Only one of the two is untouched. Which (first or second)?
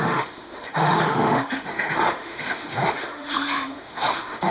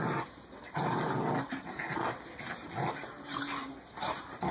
second